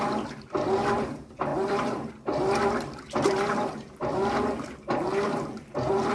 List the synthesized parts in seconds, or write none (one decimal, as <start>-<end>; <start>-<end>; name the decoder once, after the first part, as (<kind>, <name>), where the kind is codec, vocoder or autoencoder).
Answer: 1.5-2.1 (vocoder, BigVGAN v2); 3.5-6.1

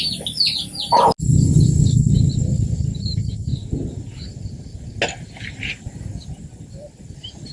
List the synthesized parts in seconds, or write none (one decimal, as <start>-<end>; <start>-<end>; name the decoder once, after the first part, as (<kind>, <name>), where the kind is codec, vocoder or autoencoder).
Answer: none